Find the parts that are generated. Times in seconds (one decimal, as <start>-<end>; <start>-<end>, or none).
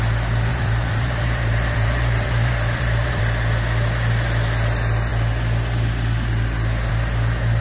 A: 0.5-3.2